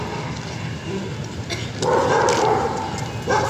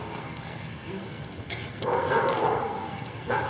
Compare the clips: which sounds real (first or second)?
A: first